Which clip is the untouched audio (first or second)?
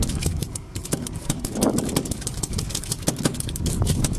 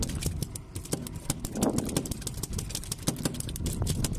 second